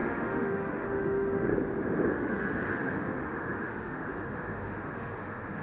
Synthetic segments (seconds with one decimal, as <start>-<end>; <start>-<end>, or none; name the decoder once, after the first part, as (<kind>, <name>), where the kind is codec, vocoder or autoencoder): 0.0-1.5 (autoencoder, DAC-VAE); 2.1-5.6